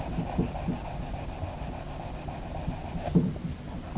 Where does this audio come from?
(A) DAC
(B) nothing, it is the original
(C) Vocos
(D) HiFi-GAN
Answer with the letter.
B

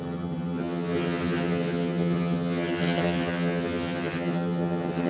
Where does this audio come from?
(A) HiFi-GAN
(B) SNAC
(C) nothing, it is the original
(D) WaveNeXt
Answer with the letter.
A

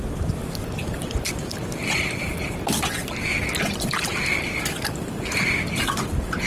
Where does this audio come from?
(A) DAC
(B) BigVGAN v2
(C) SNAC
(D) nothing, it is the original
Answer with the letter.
D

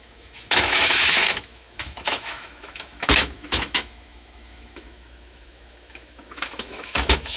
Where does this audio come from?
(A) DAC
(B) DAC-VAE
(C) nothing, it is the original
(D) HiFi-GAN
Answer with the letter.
B